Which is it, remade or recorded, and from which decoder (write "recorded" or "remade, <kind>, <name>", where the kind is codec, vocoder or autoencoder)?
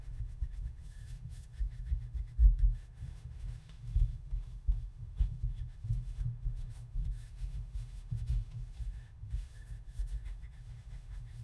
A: remade, autoencoder, DAC-VAE